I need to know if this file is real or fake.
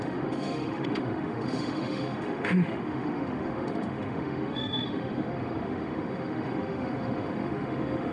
fake